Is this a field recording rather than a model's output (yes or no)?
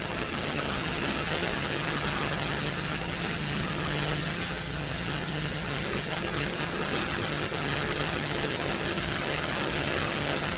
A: no